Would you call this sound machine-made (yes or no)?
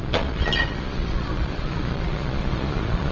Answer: yes